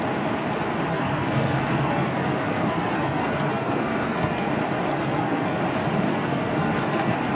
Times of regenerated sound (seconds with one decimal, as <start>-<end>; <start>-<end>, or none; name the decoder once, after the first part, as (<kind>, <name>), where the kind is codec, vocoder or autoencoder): 0.9-4.5 (codec, SNAC); 4.9-5.6; 6.1-7.3